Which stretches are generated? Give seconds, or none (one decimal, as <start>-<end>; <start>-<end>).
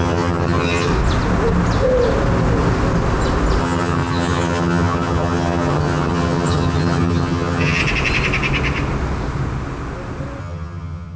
0.0-0.9; 3.6-7.8; 10.4-11.2